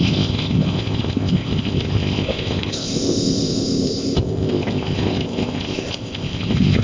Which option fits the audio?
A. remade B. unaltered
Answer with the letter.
A